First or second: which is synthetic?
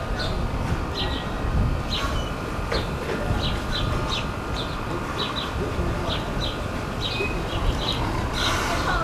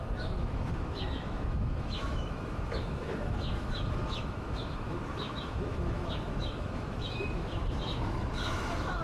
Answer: second